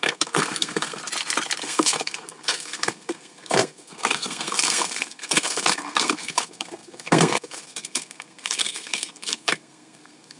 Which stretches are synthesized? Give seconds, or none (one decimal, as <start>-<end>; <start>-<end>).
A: 0.0-1.0; 1.6-10.4